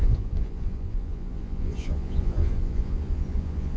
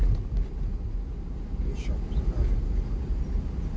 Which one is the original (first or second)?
second